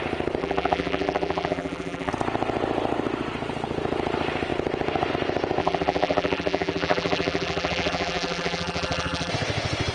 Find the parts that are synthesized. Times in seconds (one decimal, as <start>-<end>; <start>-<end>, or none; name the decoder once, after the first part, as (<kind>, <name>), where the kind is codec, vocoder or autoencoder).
0.4-2.1 (vocoder, BigVGAN v2); 5.6-9.3